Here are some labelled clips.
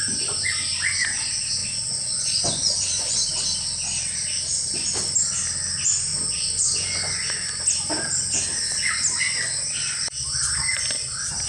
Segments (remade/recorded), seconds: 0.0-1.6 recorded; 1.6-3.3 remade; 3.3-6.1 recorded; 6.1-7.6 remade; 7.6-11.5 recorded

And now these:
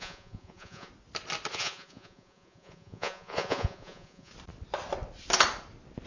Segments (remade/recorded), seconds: 0.0-0.9 remade; 0.9-1.5 recorded; 1.5-4.3 remade; 4.3-6.1 recorded

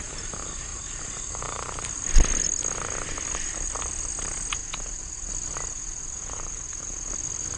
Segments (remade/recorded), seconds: 0.0-4.6 recorded; 4.6-5.3 remade; 5.3-5.7 recorded; 5.7-7.1 remade; 7.1-7.6 recorded

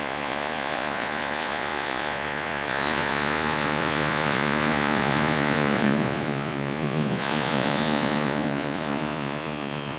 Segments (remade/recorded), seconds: 0.0-10.0 remade

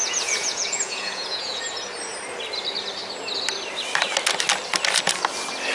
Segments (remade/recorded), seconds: 0.0-1.6 remade; 1.6-5.7 recorded

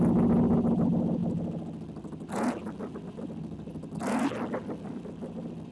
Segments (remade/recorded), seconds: 0.0-5.7 recorded

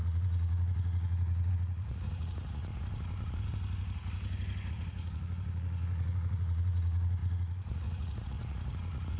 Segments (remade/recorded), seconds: 0.0-2.7 remade; 2.7-4.7 recorded; 4.7-9.2 remade

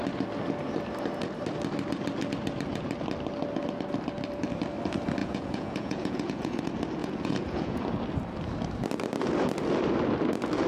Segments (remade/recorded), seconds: 0.0-5.2 recorded; 5.2-6.6 remade; 6.6-7.0 recorded; 7.0-7.8 remade; 7.8-10.7 recorded